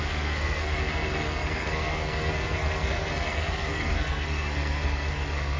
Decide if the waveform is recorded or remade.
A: remade